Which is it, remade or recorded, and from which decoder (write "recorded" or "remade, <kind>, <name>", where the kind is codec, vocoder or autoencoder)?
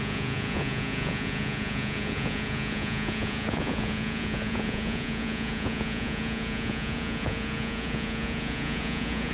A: remade, vocoder, Vocos